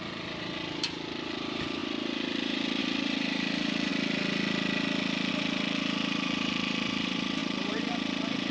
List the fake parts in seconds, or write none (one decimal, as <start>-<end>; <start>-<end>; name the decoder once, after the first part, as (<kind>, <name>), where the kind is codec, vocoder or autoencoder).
0.0-3.9 (vocoder, BigVGAN v2); 5.3-8.5